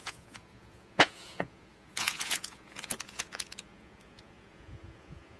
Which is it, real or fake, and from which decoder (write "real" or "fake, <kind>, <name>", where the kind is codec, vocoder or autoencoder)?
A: fake, vocoder, Vocos